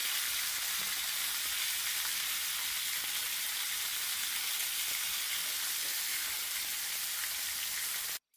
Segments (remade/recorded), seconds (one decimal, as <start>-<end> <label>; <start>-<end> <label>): 0.0-8.4 recorded